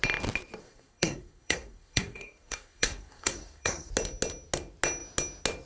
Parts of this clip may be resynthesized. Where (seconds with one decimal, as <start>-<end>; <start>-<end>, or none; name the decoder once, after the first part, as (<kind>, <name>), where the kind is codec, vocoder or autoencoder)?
0.6-3.9 (codec, SNAC)